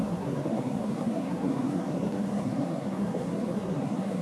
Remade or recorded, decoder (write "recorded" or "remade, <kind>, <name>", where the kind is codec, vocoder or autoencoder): remade, codec, SNAC